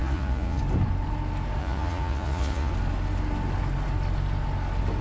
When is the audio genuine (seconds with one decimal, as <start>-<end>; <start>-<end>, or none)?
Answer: 0.6-1.6; 2.7-5.0